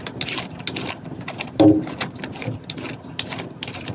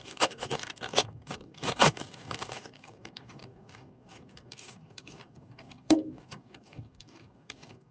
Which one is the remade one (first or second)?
second